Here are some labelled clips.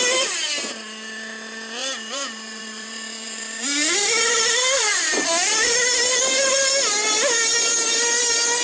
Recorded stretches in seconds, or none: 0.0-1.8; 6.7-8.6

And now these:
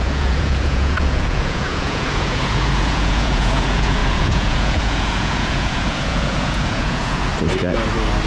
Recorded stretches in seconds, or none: 7.3-8.3

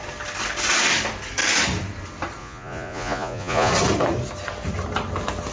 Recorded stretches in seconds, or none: 0.0-2.4; 3.7-5.5

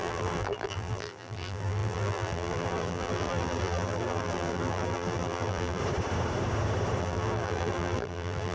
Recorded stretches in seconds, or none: 5.8-7.0

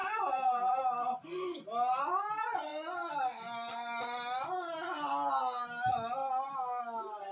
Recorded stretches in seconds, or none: 0.8-7.3

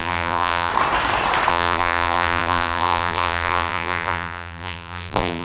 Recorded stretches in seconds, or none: 0.7-1.5

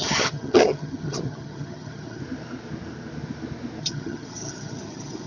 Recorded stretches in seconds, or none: 2.2-3.8